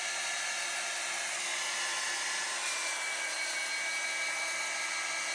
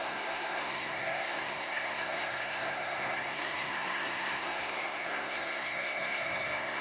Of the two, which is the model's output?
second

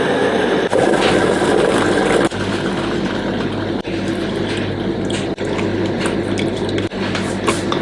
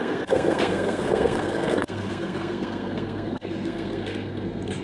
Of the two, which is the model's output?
second